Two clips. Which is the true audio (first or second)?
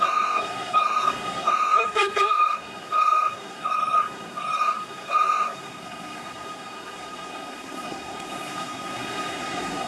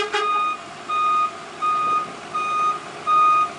second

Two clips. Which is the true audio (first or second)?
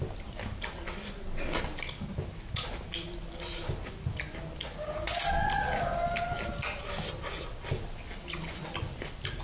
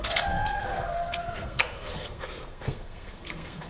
first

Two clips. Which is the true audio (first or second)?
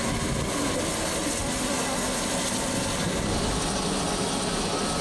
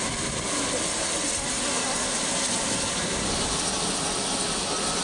first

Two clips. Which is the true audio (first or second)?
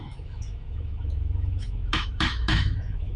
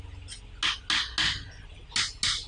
second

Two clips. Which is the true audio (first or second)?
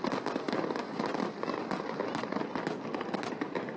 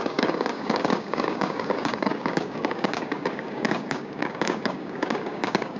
first